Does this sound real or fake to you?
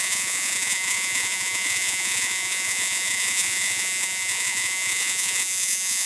fake